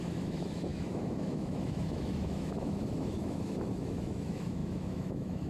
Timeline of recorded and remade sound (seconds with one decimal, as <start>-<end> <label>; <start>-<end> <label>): 0.0-5.5 remade